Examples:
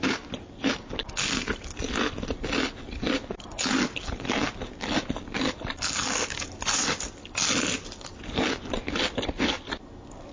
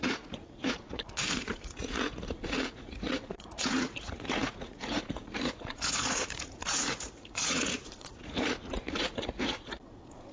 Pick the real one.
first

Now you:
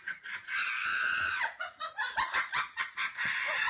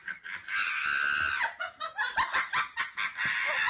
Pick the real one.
second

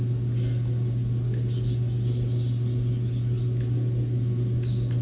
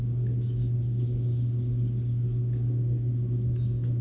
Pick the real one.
first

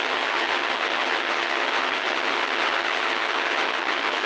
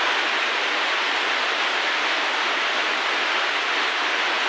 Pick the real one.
second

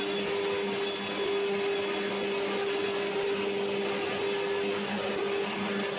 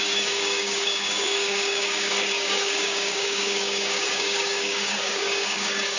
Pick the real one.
first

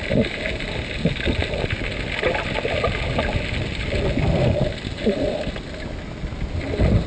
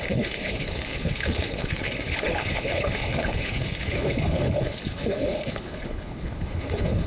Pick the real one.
first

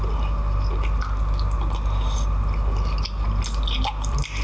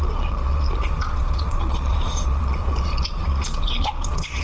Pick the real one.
first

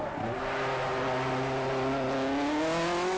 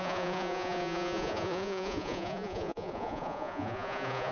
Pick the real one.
first